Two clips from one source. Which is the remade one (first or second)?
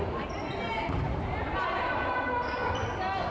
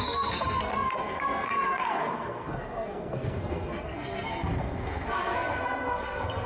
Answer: second